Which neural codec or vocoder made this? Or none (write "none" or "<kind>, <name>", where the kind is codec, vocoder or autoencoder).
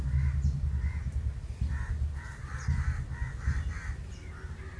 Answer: none